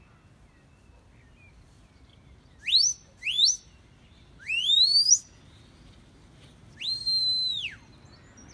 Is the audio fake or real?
real